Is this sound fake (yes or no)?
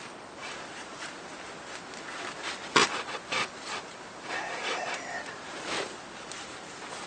no